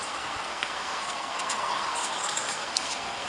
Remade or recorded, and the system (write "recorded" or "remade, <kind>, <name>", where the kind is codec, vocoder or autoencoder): remade, codec, SNAC